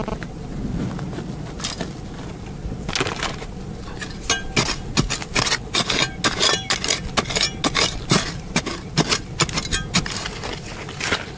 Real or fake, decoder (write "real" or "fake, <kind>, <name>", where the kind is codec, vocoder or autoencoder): real